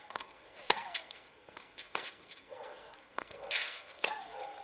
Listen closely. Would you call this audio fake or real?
fake